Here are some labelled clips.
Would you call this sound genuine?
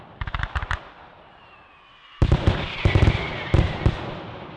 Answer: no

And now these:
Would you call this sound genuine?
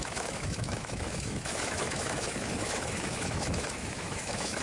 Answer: no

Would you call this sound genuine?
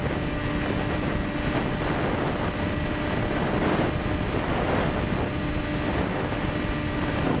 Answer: yes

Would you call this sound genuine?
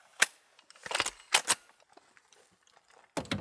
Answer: yes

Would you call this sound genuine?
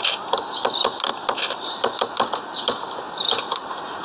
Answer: yes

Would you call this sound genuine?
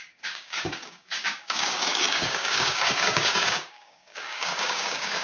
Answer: no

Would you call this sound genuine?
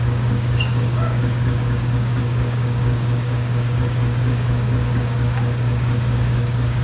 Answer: no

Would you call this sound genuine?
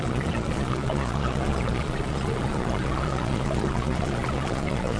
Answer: no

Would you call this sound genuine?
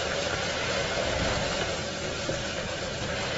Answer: yes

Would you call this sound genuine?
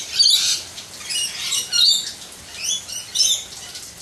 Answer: yes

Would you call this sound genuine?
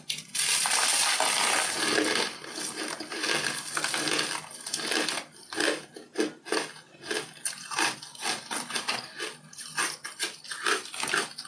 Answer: yes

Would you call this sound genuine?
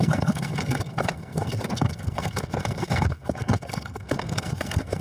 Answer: no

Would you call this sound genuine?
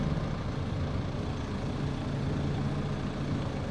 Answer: yes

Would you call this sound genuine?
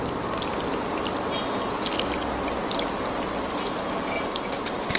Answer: yes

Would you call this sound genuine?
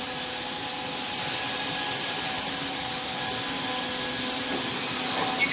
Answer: yes